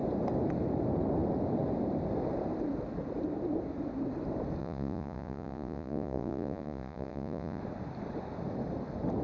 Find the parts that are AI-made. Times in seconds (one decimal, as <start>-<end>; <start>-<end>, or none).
4.6-7.6